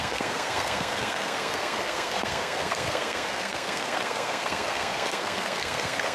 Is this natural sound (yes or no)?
no